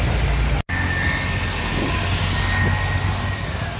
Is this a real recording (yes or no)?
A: yes